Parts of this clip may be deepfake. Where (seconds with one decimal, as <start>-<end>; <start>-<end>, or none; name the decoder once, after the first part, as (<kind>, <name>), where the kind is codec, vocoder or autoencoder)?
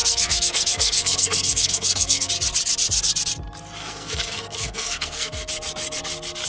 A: 0.0-2.3 (codec, SNAC); 3.8-5.5